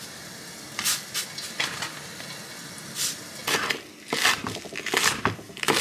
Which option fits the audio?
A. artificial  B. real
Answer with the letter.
B